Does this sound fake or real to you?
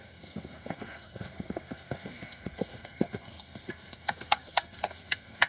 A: fake